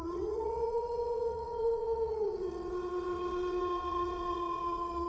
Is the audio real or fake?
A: fake